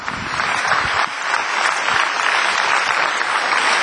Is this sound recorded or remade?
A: recorded